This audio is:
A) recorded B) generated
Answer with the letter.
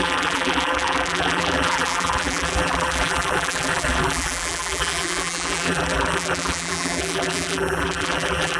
B